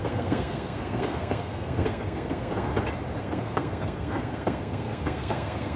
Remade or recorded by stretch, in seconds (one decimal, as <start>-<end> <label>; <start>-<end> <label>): 0.0-2.7 remade; 2.7-3.2 recorded; 3.2-5.8 remade